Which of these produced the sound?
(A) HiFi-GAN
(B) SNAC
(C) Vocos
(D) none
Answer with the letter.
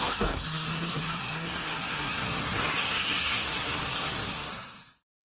B